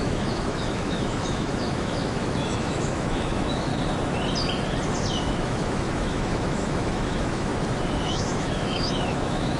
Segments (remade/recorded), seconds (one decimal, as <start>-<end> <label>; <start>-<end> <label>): 0.0-3.7 remade; 3.7-5.2 recorded; 5.2-7.5 remade; 7.5-8.1 recorded; 8.1-9.6 remade